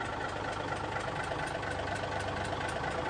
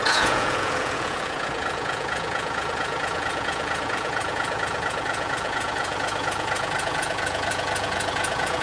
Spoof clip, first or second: second